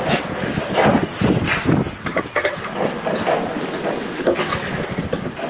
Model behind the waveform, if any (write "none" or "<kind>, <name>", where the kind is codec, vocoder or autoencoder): none